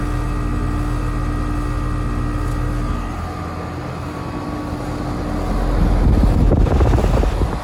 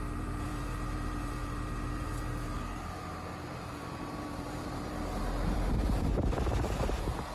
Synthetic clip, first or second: second